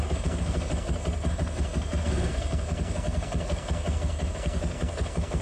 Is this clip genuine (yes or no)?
no